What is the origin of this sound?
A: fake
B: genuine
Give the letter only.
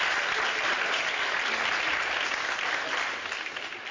B